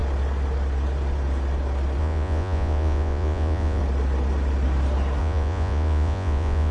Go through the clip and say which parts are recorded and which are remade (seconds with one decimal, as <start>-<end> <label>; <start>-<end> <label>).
0.0-2.0 recorded; 2.0-3.8 remade; 3.8-5.2 recorded; 5.2-6.7 remade